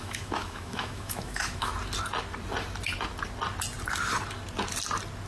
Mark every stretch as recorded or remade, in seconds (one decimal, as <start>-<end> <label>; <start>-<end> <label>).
0.0-1.7 remade; 1.7-5.3 recorded